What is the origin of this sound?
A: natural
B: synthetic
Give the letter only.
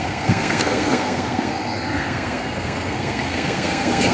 B